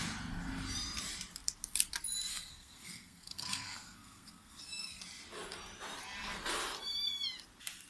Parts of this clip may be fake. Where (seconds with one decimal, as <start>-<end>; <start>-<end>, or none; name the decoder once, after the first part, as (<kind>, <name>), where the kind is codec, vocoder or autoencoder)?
2.3-5.0 (codec, SNAC)